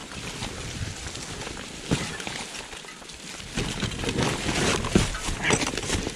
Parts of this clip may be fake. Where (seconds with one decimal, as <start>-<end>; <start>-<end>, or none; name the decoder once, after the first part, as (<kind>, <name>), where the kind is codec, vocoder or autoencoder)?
none